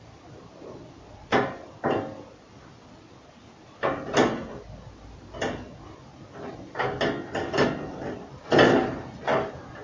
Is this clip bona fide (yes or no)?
yes